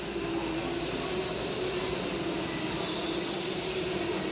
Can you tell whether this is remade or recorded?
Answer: recorded